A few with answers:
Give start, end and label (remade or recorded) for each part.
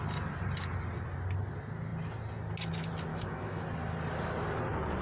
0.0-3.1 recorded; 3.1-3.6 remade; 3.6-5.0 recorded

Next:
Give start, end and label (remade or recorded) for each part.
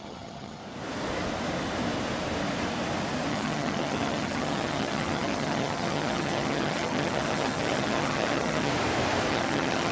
0.0-0.6 remade; 0.6-3.3 recorded; 3.3-8.7 remade; 8.7-9.3 recorded; 9.3-9.9 remade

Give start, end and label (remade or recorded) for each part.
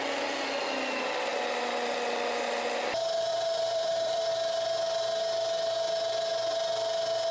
0.0-3.3 recorded; 3.3-4.3 remade; 4.3-7.3 recorded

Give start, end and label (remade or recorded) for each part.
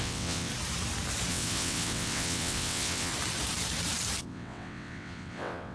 0.0-0.5 remade; 0.5-1.3 recorded; 1.3-3.1 remade; 3.1-4.2 recorded; 4.2-5.7 remade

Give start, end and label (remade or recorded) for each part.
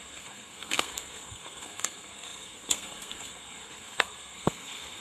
0.0-5.0 remade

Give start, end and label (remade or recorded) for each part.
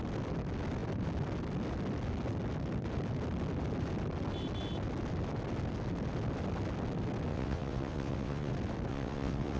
0.0-7.3 recorded; 7.3-8.5 remade; 8.5-8.9 recorded; 8.9-9.6 remade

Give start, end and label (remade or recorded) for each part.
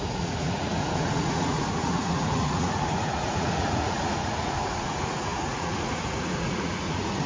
0.0-7.3 remade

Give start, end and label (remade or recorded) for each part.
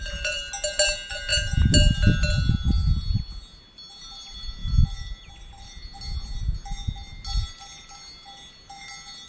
0.0-9.3 recorded